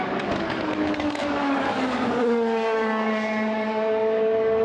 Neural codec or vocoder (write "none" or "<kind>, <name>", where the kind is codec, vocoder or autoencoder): codec, DAC